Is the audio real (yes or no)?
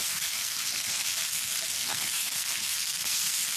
no